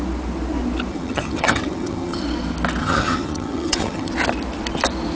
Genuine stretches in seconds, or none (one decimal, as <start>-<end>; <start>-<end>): 0.0-0.9; 2.2-2.8; 4.1-5.2